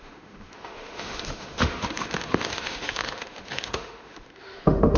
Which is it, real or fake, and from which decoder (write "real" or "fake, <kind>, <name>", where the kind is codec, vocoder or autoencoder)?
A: fake, autoencoder, DAC-VAE